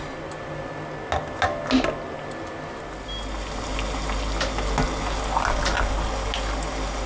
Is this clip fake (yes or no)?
no